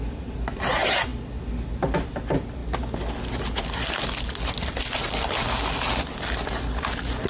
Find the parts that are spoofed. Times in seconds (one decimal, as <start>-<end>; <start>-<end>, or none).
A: none